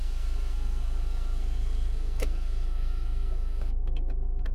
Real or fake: fake